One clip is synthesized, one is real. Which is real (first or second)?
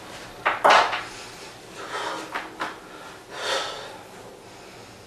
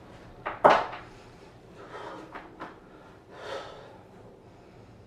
first